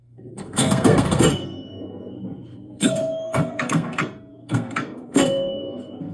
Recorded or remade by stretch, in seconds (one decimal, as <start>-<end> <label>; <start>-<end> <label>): 0.0-6.1 remade